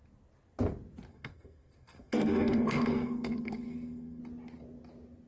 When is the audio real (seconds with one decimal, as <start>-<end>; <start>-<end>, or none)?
0.0-1.1; 4.2-5.3